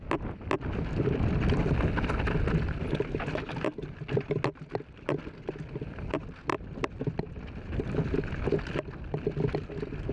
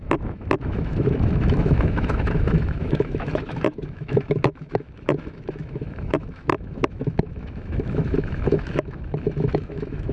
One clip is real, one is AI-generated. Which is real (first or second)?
first